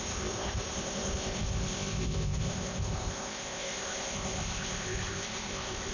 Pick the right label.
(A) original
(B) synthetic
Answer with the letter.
B